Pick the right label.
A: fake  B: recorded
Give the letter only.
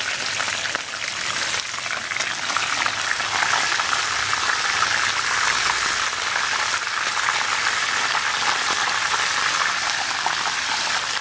B